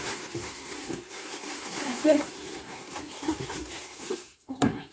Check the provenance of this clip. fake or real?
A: fake